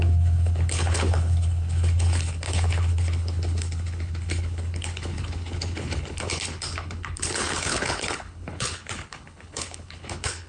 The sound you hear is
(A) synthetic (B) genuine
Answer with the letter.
A